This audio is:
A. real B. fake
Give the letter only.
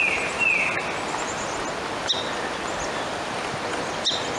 A